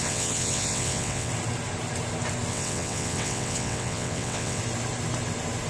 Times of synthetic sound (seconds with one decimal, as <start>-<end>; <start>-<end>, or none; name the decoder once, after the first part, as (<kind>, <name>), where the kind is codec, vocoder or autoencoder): 0.0-1.3 (vocoder, WaveNeXt); 2.5-4.6